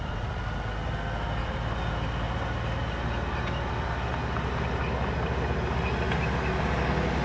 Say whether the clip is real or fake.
real